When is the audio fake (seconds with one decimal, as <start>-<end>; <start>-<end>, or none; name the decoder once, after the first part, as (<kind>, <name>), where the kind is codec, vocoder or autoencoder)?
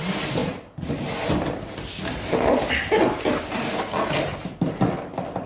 0.4-3.7 (vocoder, BigVGAN v2)